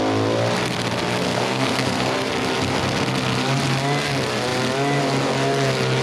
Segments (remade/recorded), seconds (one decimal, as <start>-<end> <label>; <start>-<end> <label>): 0.0-1.2 recorded; 1.2-2.3 remade; 2.3-6.0 recorded